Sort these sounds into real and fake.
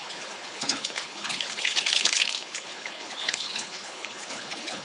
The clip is fake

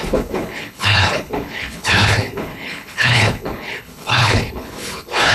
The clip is fake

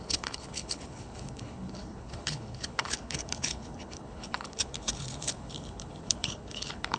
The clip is fake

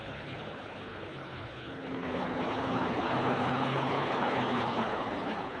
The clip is fake